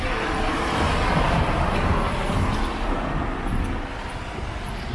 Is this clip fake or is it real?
real